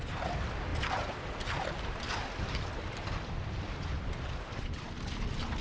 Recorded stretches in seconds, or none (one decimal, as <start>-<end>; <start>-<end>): 0.0-5.6